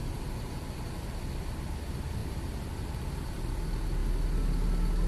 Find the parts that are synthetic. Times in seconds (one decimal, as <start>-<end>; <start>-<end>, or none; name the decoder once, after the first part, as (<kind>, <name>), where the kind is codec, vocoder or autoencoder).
0.0-1.2 (vocoder, BigVGAN v2); 2.2-3.4